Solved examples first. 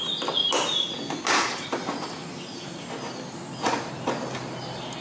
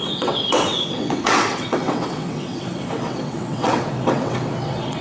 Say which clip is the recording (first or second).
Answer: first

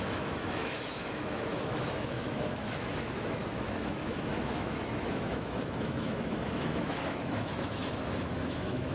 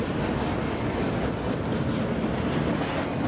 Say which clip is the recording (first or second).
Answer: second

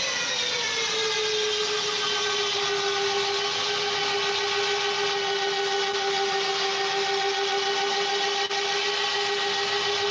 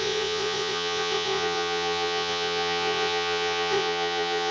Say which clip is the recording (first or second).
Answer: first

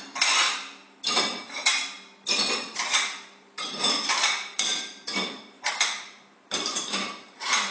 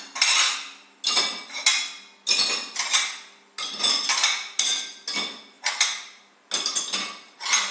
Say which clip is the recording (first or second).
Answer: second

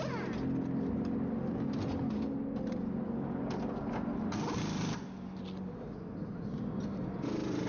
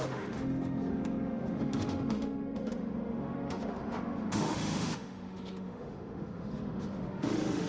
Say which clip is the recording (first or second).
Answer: first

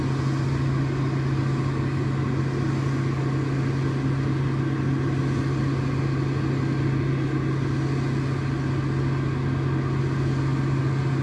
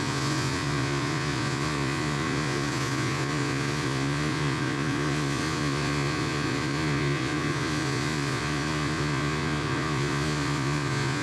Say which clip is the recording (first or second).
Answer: first